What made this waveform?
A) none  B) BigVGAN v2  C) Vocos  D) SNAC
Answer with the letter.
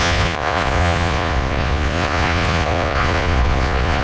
C